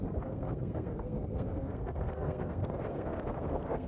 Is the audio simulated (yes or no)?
yes